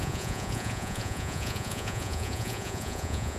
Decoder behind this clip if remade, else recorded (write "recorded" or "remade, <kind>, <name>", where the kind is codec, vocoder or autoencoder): remade, vocoder, Vocos